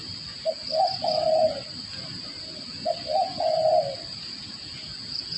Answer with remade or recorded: recorded